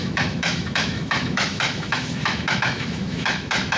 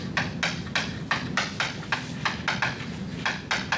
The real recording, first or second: second